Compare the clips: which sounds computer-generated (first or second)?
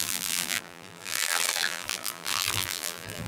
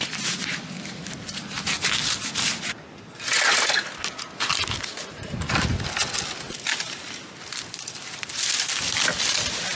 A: first